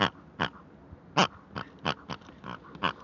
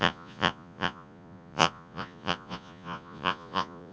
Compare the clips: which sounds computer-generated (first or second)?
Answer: second